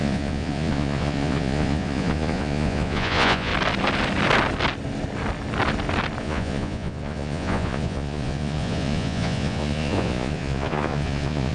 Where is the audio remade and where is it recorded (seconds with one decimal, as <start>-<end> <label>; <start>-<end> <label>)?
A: 0.0-3.5 remade; 3.5-6.2 recorded; 6.2-11.5 remade